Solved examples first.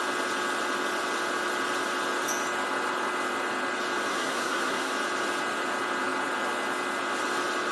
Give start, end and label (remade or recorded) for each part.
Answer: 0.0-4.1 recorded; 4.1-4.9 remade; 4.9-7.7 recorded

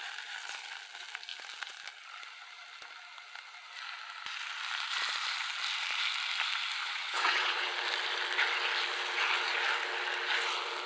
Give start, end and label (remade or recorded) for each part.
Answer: 0.0-6.8 recorded; 6.8-7.7 remade; 7.7-10.9 recorded

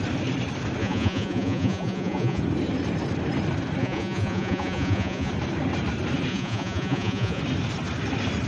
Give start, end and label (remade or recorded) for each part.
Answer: 0.0-0.8 recorded; 0.8-2.4 remade; 2.4-3.8 recorded; 3.8-5.3 remade; 5.3-6.3 recorded; 6.3-7.4 remade; 7.4-8.5 recorded

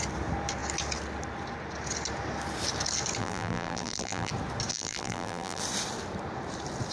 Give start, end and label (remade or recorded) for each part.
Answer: 0.0-3.2 recorded; 3.2-4.3 remade; 4.3-4.7 recorded; 4.7-5.6 remade; 5.6-6.9 recorded

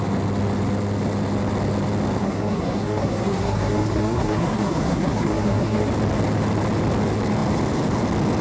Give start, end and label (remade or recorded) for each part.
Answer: 0.0-2.2 recorded; 2.2-5.9 remade; 5.9-8.4 recorded

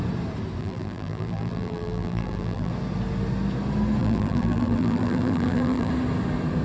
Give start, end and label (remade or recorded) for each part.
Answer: 0.0-0.6 recorded; 0.6-2.7 remade; 2.7-4.0 recorded; 4.0-5.9 remade; 5.9-6.6 recorded

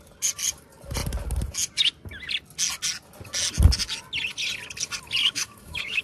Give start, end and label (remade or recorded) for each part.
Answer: 0.0-5.2 recorded; 5.2-6.0 remade

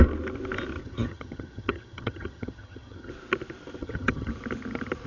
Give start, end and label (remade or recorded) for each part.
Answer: 0.0-0.8 recorded; 0.8-3.1 remade; 3.1-3.8 recorded; 3.8-4.3 remade; 4.3-5.1 recorded